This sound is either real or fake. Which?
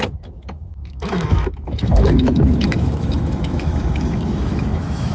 fake